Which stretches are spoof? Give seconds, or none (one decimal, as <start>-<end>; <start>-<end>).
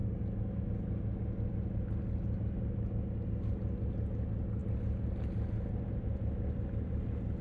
none